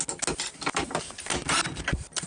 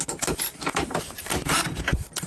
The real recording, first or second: first